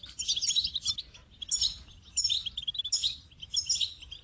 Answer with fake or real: real